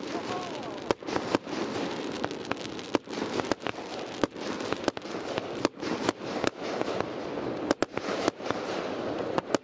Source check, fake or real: real